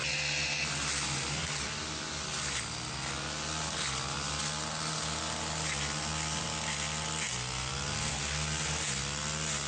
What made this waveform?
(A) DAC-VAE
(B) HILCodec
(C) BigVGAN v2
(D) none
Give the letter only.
D